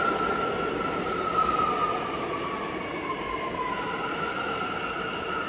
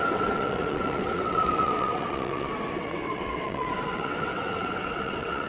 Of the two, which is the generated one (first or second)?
second